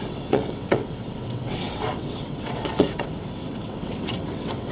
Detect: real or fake fake